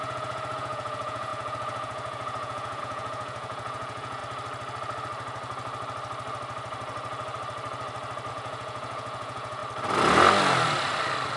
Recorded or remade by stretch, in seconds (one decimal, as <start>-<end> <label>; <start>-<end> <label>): 0.0-4.2 remade; 4.2-8.3 recorded; 8.3-9.6 remade; 9.6-11.4 recorded